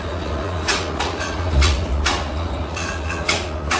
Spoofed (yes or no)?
yes